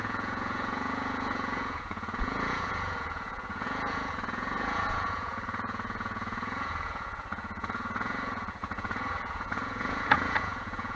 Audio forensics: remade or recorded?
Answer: remade